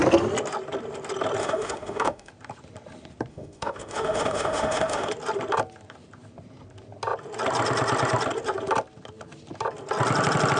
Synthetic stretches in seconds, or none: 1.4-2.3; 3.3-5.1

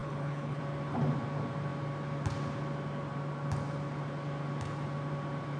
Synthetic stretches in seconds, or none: 0.0-0.6